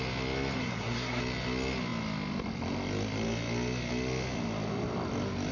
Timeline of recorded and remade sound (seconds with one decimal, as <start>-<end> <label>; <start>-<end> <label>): 0.0-0.6 recorded; 0.6-1.2 remade; 1.2-5.5 recorded